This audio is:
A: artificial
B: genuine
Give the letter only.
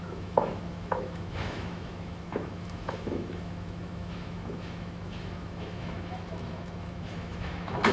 A